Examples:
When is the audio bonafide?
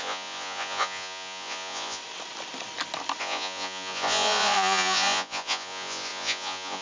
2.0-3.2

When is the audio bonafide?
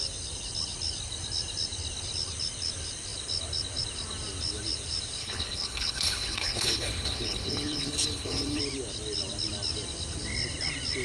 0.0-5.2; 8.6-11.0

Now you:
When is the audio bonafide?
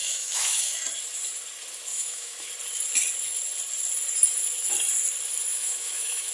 0.8-1.9; 2.5-5.5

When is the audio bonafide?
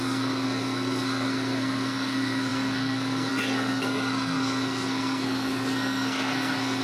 none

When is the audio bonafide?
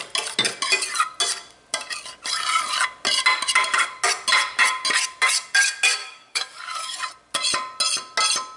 0.0-6.0; 7.0-8.6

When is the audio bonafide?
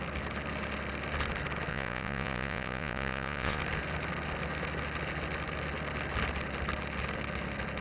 0.0-1.7; 3.6-7.8